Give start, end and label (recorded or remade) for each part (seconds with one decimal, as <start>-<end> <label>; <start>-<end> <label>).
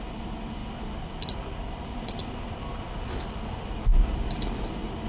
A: 0.0-5.1 recorded